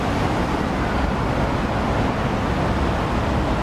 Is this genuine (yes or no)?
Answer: yes